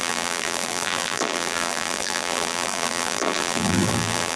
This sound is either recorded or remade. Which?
remade